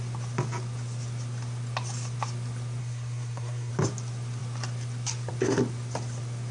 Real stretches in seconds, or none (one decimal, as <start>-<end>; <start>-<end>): 0.0-2.8; 3.7-6.5